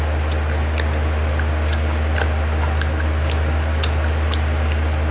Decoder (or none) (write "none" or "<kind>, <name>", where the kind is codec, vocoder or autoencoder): none